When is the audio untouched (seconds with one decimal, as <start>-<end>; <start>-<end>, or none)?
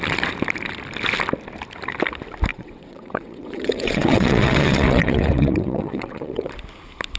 0.0-2.5; 6.5-7.2